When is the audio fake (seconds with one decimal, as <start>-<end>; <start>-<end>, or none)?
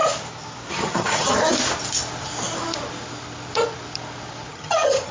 0.7-1.4; 4.5-5.1